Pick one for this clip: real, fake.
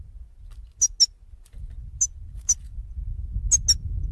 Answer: real